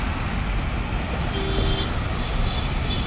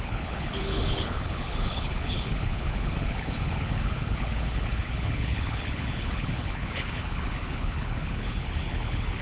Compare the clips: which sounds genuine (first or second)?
first